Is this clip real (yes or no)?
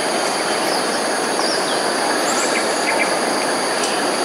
yes